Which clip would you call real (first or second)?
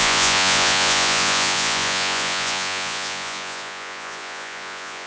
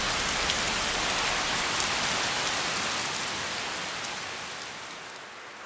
second